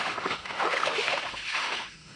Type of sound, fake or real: fake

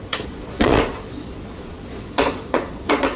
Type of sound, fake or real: fake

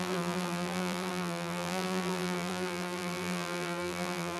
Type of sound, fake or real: fake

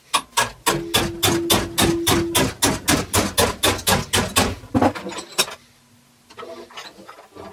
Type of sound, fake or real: real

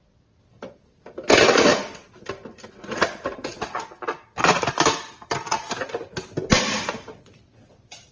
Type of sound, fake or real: real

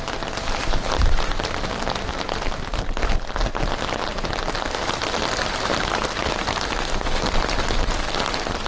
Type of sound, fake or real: real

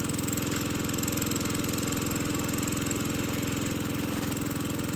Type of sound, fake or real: real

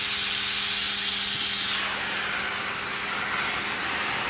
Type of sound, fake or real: real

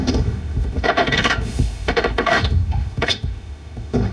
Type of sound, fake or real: fake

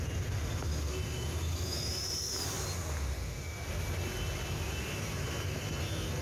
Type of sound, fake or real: real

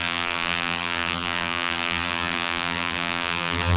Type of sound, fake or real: fake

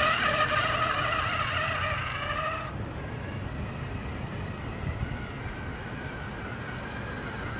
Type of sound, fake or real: real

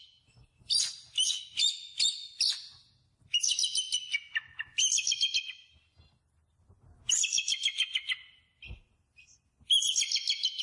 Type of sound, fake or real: real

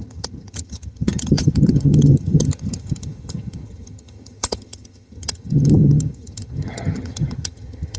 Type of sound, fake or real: fake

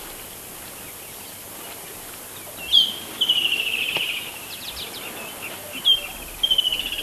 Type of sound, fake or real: real